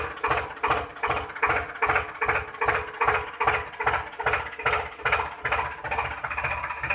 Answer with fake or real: real